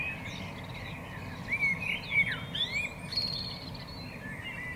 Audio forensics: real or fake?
real